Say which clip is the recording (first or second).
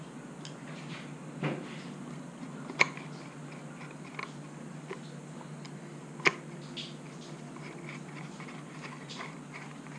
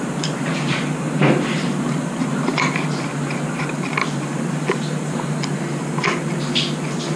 first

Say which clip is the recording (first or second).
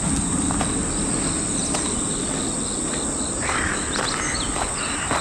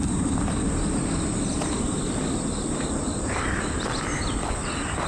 first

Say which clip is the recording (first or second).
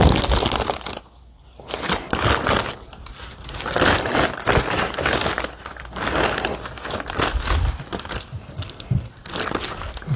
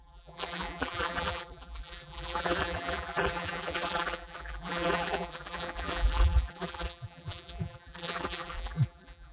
first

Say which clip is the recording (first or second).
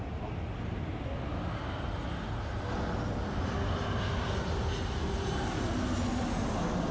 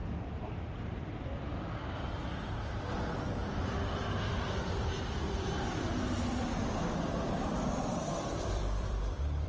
first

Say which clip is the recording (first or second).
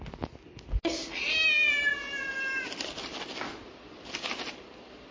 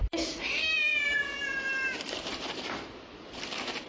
first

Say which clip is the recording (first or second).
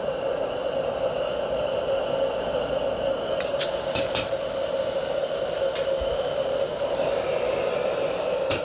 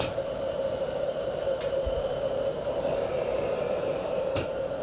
first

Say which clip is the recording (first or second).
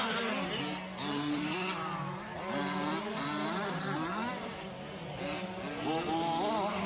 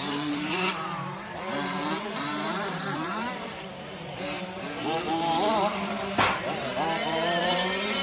first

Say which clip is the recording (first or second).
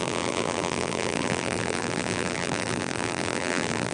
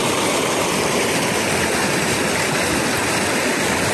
second